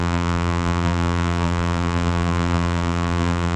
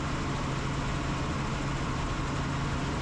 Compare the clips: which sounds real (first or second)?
second